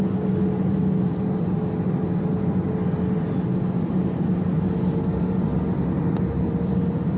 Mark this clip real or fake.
real